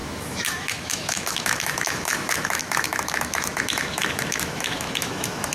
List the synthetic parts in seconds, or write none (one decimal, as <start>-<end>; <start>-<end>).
0.0-5.5